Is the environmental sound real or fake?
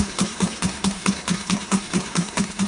fake